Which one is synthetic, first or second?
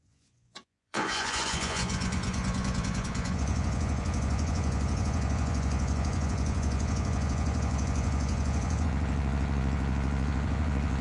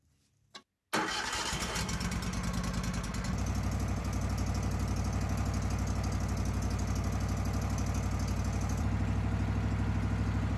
first